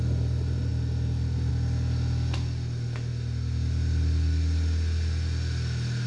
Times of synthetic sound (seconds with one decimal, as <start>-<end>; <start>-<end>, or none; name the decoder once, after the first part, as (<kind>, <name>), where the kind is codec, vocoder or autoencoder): none